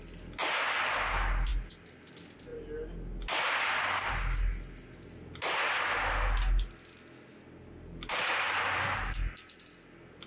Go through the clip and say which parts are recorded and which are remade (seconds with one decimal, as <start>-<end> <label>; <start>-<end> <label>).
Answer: 0.0-10.3 recorded